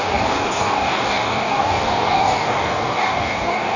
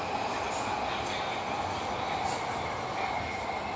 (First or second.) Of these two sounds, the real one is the second